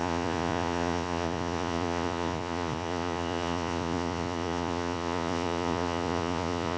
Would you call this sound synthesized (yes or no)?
yes